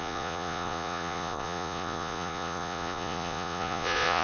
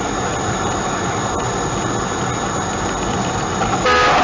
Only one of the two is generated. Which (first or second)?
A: first